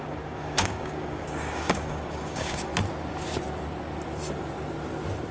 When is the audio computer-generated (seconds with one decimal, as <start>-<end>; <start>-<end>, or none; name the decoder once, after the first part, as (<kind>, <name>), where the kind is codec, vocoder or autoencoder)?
0.0-2.7 (codec, DAC)